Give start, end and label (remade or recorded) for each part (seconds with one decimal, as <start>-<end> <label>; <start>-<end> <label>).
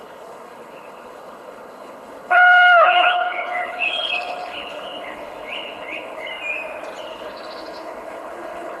0.0-6.3 remade; 6.3-7.0 recorded; 7.0-8.8 remade